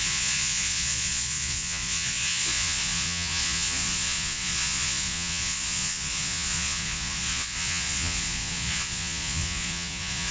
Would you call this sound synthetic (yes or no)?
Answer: yes